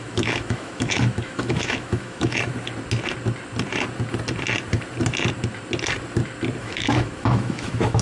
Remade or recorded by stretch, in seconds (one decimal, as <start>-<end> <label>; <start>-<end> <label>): 0.0-2.5 remade; 2.5-6.6 recorded; 6.6-8.0 remade

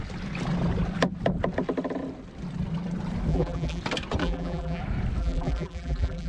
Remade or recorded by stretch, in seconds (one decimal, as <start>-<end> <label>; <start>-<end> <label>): 0.0-3.3 recorded; 3.3-3.8 remade; 3.8-4.2 recorded; 4.2-4.8 remade; 4.8-5.2 recorded; 5.2-6.3 remade